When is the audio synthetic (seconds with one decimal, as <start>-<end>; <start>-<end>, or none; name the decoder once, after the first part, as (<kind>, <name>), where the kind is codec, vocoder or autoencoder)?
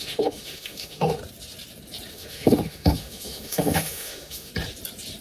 0.0-1.2 (autoencoder, DAC-VAE); 2.1-4.5